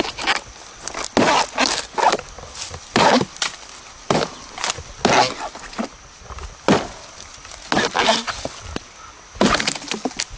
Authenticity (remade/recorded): recorded